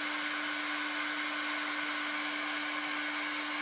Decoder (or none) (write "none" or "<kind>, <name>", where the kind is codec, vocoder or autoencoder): none